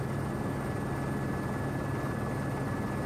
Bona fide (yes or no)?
yes